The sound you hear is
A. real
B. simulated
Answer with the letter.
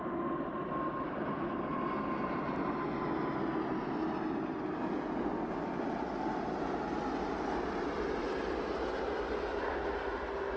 A